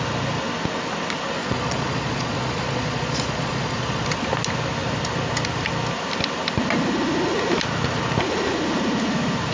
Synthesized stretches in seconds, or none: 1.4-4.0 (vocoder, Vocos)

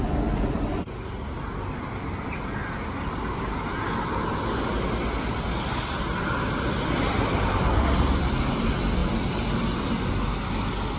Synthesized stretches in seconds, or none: none

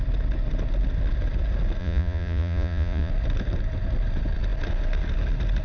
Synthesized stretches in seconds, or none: 1.8-3.1 (vocoder, Vocos)

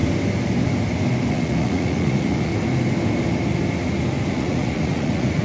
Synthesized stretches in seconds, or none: 1.3-2.5 (vocoder, Vocos); 4.3-5.4

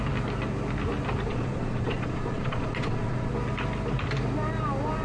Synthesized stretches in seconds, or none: 1.3-3.3 (vocoder, Vocos)

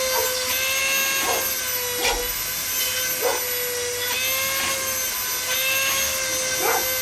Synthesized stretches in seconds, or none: none